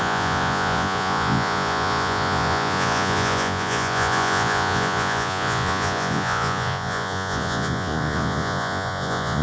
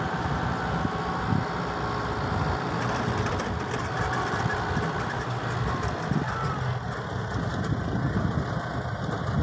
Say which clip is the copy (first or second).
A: first